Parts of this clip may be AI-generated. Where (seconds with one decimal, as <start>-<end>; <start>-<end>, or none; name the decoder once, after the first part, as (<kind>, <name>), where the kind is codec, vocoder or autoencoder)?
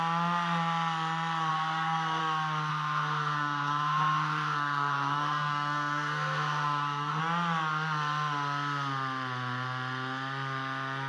1.5-2.2 (codec, SNAC); 2.7-7.2